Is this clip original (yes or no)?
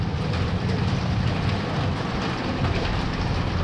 no